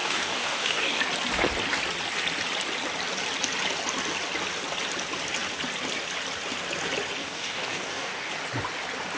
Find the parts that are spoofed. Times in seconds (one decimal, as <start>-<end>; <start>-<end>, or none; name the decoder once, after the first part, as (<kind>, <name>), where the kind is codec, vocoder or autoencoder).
0.0-1.0 (codec, DAC); 7.2-8.3